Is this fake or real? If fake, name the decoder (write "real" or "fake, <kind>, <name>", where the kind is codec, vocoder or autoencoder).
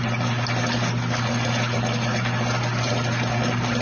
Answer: real